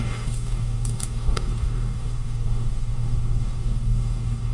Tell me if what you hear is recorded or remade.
remade